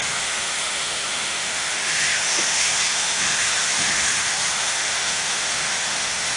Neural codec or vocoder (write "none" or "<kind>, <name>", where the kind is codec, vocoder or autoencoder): autoencoder, DAC-VAE